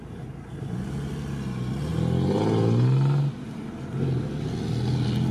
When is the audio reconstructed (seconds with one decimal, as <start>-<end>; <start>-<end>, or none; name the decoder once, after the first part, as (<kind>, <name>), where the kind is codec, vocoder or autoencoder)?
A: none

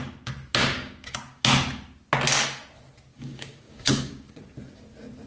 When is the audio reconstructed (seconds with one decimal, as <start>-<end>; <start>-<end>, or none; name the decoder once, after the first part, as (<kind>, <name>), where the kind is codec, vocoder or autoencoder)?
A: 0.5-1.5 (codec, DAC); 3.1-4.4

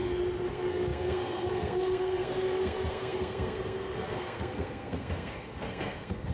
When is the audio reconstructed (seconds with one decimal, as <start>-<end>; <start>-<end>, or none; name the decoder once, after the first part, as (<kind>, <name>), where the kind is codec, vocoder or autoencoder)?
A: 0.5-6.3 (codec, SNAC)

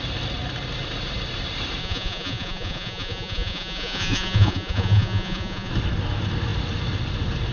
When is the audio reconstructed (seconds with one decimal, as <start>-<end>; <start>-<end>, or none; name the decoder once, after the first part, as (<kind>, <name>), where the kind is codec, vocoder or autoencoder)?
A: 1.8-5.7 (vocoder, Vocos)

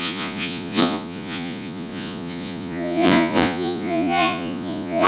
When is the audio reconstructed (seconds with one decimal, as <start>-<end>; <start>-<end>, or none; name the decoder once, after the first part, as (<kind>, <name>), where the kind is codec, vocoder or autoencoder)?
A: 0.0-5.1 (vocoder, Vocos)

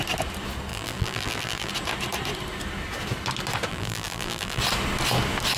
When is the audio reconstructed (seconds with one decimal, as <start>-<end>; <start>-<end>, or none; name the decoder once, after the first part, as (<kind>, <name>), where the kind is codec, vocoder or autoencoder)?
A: 0.7-1.7 (vocoder, BigVGAN v2); 3.7-4.6

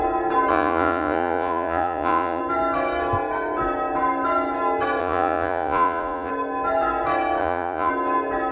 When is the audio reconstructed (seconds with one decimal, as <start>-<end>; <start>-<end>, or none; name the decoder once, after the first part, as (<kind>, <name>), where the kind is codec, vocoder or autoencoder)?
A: 0.5-2.4 (vocoder, Vocos); 5.0-6.3; 7.4-7.9